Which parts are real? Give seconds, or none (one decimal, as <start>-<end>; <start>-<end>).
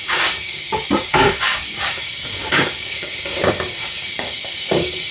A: none